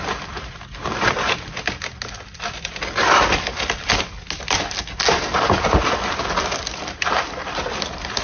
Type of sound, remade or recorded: recorded